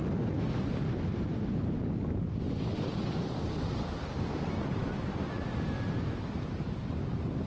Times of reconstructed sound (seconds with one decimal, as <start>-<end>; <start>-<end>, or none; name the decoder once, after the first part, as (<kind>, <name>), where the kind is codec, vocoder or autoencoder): none